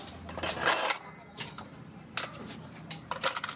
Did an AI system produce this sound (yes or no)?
no